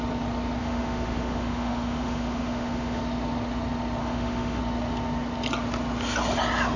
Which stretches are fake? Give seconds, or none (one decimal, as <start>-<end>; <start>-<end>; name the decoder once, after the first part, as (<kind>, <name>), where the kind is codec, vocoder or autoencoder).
0.6-3.0 (autoencoder, DAC-VAE); 4.0-4.6